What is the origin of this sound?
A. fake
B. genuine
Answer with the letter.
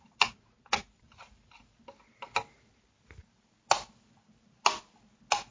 B